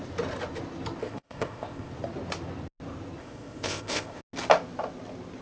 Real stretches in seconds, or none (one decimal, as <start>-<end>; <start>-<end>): 0.0-1.0; 1.9-3.2; 4.2-5.4